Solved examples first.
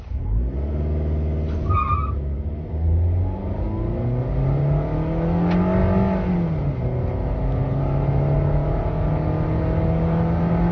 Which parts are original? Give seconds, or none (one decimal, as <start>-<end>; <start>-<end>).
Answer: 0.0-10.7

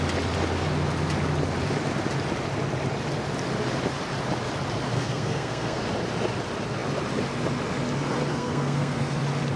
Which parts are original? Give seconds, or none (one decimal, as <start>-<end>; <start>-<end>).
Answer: 0.0-4.9; 5.8-8.3; 9.2-9.6

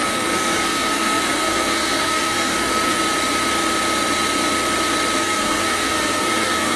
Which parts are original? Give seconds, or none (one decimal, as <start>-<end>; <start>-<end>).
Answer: 3.0-5.2

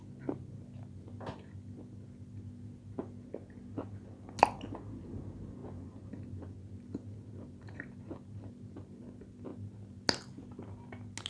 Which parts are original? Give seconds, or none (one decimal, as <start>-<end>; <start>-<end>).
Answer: 0.0-11.3

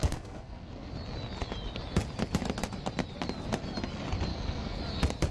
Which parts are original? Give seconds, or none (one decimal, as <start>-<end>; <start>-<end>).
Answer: 0.9-4.3; 4.8-5.3